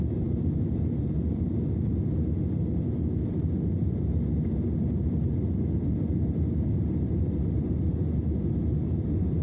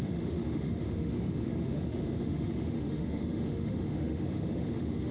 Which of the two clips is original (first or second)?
first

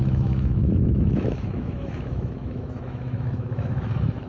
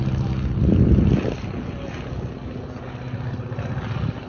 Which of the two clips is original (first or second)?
second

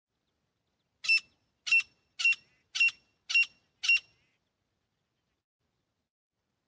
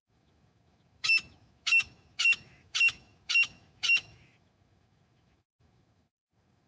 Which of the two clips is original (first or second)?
first